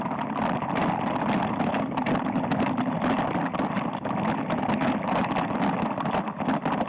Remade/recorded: recorded